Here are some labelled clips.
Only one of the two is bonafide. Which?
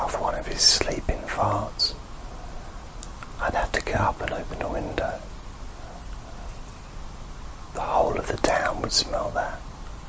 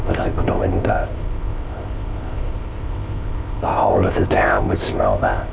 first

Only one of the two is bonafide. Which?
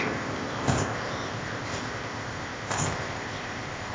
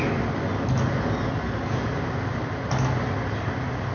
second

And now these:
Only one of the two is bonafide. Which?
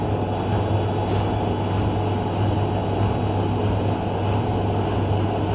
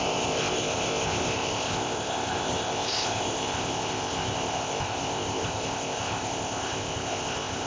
first